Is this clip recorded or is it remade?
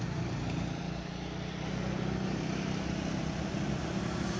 recorded